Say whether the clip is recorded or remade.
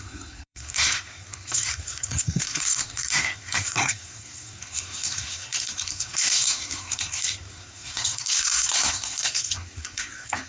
remade